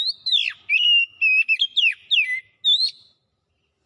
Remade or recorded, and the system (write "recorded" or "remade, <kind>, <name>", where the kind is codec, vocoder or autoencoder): recorded